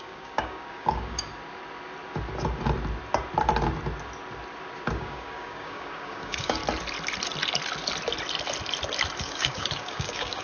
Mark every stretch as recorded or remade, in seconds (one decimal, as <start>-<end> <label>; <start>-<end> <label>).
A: 0.0-1.3 remade; 1.3-4.9 recorded; 4.9-6.6 remade; 6.6-9.2 recorded; 9.2-10.4 remade